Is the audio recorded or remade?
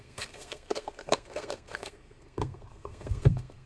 remade